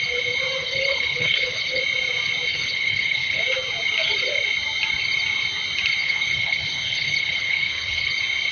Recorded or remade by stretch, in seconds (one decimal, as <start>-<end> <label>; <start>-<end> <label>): 0.0-0.6 recorded; 0.6-1.8 remade; 1.8-2.5 recorded; 2.5-3.4 remade; 3.4-6.0 recorded; 6.0-8.1 remade; 8.1-8.5 recorded